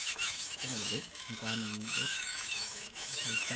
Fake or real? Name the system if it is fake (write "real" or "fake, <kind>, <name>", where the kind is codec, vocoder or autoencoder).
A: fake, autoencoder, DAC-VAE